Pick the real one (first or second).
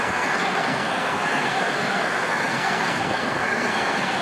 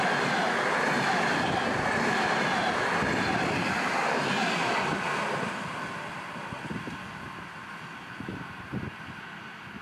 second